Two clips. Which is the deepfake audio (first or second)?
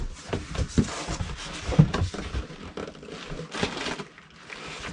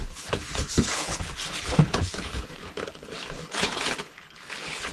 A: second